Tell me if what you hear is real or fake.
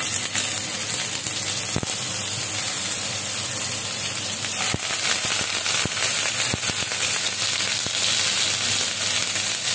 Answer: real